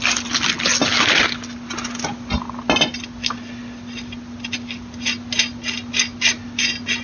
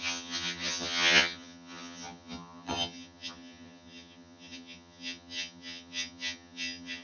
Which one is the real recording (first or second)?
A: first